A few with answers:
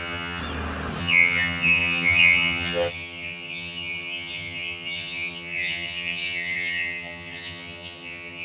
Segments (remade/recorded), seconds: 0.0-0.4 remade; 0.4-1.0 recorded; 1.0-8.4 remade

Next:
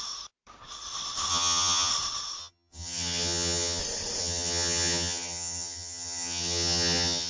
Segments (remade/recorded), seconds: 0.0-1.3 recorded; 1.3-1.9 remade; 1.9-2.4 recorded; 2.4-3.8 remade; 3.8-4.2 recorded; 4.2-7.3 remade